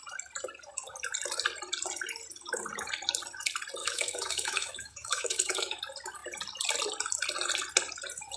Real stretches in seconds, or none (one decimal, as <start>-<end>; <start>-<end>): 0.0-3.8; 5.8-8.4